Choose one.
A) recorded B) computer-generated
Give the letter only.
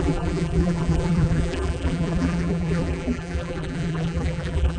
B